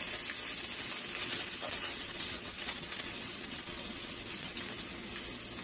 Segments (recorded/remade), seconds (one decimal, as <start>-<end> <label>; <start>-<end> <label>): 0.0-1.2 recorded; 1.2-4.6 remade; 4.6-5.6 recorded